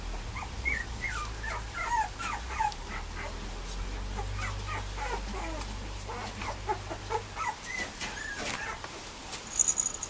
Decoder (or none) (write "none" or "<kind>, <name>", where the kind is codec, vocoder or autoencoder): none